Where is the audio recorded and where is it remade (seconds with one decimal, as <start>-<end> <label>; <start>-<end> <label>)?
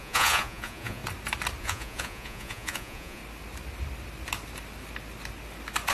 0.0-1.0 remade; 1.0-1.6 recorded; 1.6-3.2 remade; 3.2-5.9 recorded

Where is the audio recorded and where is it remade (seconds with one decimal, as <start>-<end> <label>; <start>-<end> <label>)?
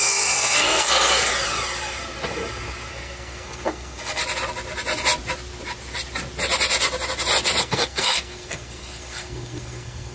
0.0-1.3 remade; 1.3-2.9 recorded; 2.9-4.2 remade; 4.2-7.6 recorded; 7.6-10.1 remade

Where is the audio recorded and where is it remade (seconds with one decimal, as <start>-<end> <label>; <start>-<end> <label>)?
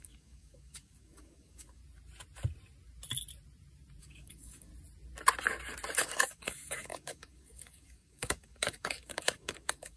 0.0-1.8 remade; 1.8-4.0 recorded; 4.0-4.7 remade; 4.7-6.0 recorded; 6.0-10.0 remade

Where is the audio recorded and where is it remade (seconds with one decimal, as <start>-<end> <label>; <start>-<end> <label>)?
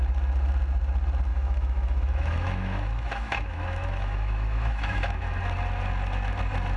0.0-1.3 recorded; 1.3-5.4 remade; 5.4-6.8 recorded